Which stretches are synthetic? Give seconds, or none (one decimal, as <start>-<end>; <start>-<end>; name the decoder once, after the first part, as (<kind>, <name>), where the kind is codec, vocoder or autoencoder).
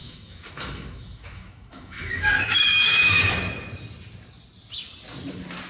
0.0-3.4 (autoencoder, DAC-VAE)